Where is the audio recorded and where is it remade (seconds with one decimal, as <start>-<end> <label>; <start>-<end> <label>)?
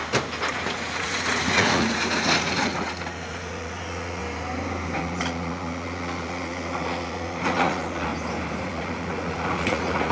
0.0-0.5 recorded; 0.5-4.2 remade; 4.2-5.0 recorded; 5.0-8.1 remade; 8.1-8.6 recorded; 8.6-10.1 remade